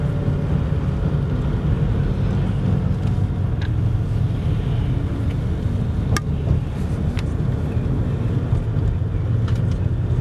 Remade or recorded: recorded